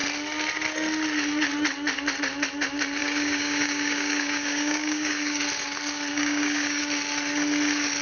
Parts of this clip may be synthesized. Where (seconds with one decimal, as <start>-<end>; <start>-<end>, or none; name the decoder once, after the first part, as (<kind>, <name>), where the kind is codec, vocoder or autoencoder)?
3.0-5.4 (codec, DAC); 6.1-6.8